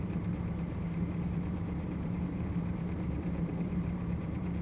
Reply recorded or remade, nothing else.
remade